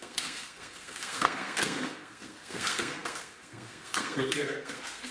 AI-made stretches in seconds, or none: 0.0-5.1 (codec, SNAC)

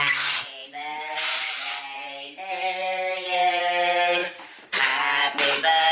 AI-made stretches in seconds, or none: 0.6-1.6 (vocoder, BigVGAN v2); 2.8-3.6; 4.2-4.8

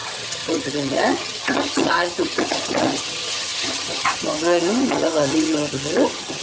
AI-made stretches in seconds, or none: 0.0-6.4 (vocoder, HiFi-GAN)

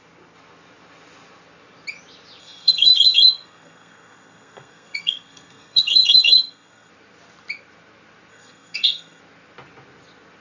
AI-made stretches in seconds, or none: 2.4-6.9 (codec, SNAC); 8.3-9.2

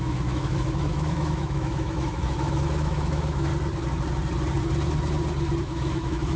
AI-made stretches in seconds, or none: 0.0-3.5 (autoencoder, DAC-VAE); 5.6-6.4

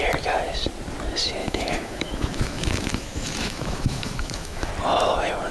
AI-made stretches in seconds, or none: 1.4-4.7 (autoencoder, DAC-VAE)

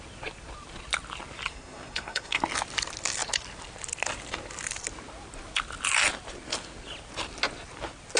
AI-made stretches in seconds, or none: 1.5-2.4 (codec, SNAC)